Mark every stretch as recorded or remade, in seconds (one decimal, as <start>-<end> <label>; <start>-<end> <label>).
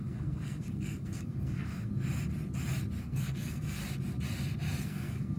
0.0-1.9 remade; 1.9-3.0 recorded; 3.0-3.8 remade; 3.8-4.8 recorded; 4.8-5.4 remade